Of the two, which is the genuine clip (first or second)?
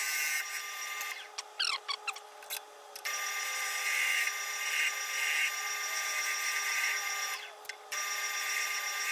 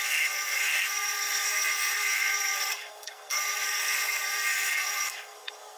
first